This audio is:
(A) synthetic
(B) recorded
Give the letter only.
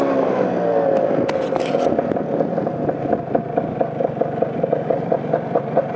B